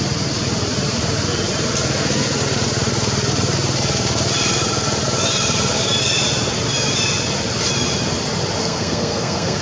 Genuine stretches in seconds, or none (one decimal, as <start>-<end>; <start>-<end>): 0.0-8.6